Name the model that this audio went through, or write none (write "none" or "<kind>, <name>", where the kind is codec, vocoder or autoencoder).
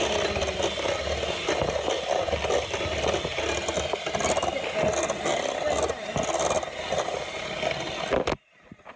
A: none